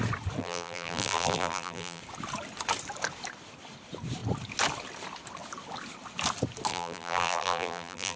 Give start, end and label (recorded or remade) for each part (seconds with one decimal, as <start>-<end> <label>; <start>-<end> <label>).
0.0-0.4 recorded; 0.4-2.0 remade; 2.0-6.7 recorded; 6.7-8.2 remade